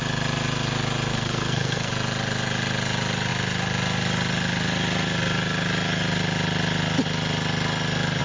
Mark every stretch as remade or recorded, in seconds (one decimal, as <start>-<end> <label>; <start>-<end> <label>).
0.0-1.1 recorded; 1.1-1.9 remade; 1.9-8.2 recorded